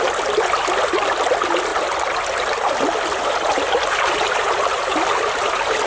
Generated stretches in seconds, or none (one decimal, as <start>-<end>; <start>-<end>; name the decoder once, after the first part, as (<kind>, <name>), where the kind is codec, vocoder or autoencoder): none